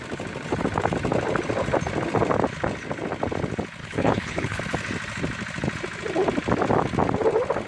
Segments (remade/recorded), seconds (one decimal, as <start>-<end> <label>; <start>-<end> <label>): 0.0-3.8 recorded; 3.8-4.6 remade; 4.6-7.7 recorded